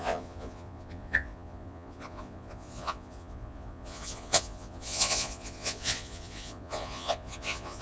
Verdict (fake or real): fake